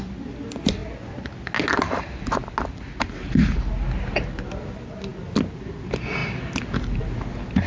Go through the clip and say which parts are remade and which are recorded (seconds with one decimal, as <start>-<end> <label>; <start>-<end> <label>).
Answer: 0.0-7.7 recorded

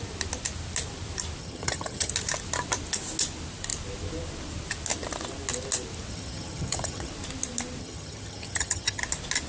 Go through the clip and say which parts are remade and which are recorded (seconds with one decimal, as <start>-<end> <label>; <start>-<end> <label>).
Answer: 0.0-1.4 recorded; 1.4-2.1 remade; 2.1-6.1 recorded; 6.1-7.1 remade; 7.1-7.8 recorded; 7.8-9.0 remade; 9.0-9.5 recorded

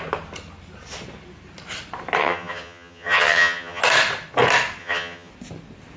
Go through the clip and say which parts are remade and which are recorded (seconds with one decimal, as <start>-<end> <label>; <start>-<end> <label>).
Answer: 0.0-2.2 recorded; 2.2-3.8 remade; 3.8-4.8 recorded; 4.8-5.3 remade; 5.3-6.0 recorded

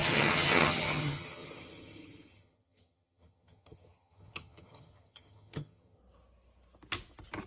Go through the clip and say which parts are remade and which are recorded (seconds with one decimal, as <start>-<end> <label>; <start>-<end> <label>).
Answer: 0.0-6.0 remade; 6.0-7.5 recorded

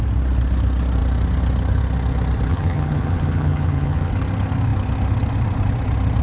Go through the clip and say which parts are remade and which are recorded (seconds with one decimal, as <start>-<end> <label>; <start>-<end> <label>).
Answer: 0.0-2.5 recorded; 2.5-4.1 remade; 4.1-6.2 recorded

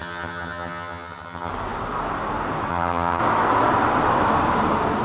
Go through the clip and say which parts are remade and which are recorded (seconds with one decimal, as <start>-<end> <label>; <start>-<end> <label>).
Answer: 0.0-1.5 remade; 1.5-2.7 recorded; 2.7-3.2 remade; 3.2-5.0 recorded

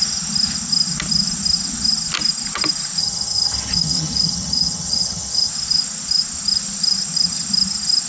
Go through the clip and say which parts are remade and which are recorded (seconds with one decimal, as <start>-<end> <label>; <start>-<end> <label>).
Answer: 0.0-3.0 recorded; 3.0-5.5 remade; 5.5-8.1 recorded